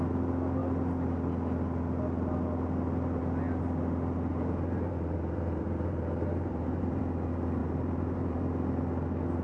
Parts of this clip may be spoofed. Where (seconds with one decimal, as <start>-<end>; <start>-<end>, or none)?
4.3-7.0; 7.6-8.4